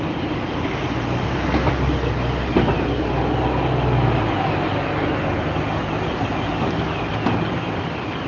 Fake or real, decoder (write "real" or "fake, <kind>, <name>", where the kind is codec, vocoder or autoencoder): real